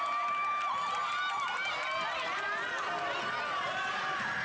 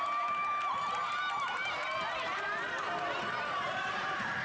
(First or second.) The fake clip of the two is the second